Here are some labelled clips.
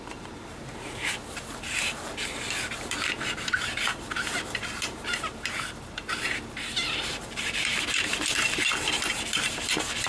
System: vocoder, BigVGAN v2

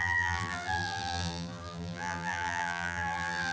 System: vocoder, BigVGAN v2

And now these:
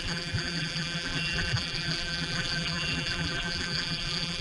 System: vocoder, BigVGAN v2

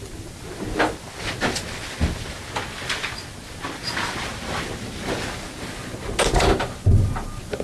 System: none